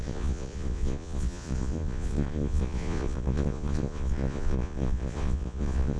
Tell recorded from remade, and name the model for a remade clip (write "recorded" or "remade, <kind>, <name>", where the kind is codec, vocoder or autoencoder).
remade, vocoder, Vocos